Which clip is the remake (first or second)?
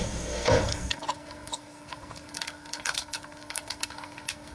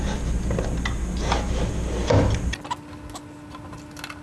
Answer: first